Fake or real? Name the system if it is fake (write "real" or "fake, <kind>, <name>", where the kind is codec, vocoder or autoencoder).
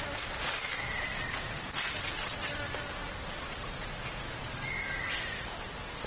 real